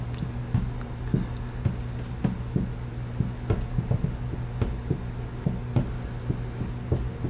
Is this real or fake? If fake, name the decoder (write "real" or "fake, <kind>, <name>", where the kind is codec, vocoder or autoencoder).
real